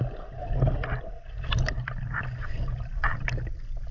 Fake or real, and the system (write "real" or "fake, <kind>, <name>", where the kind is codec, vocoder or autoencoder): real